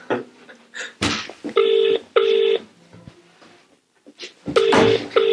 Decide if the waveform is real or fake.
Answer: real